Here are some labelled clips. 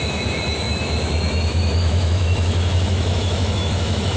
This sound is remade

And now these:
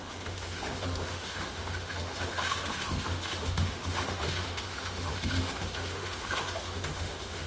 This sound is remade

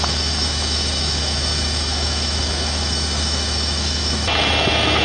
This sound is remade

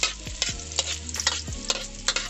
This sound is recorded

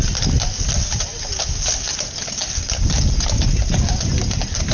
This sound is recorded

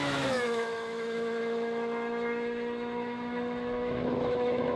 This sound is remade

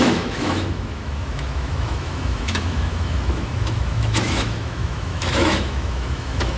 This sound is remade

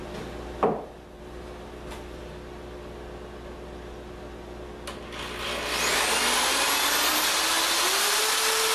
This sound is recorded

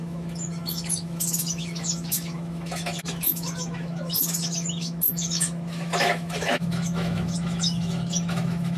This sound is remade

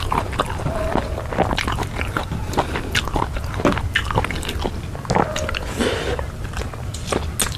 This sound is recorded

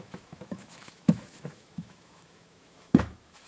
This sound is remade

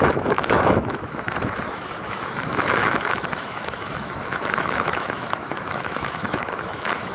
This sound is remade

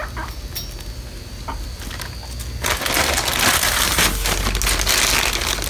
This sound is recorded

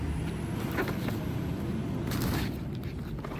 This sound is recorded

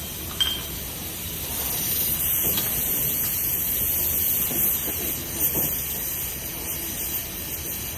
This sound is recorded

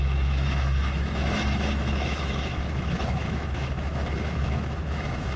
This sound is remade